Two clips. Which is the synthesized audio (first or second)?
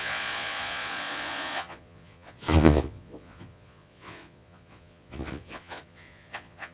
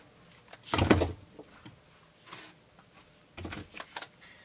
first